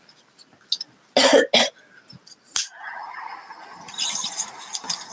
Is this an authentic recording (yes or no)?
yes